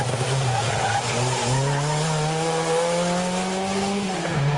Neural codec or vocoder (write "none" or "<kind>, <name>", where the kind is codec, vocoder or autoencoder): none